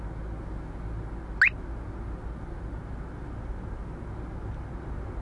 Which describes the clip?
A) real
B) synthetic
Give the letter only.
A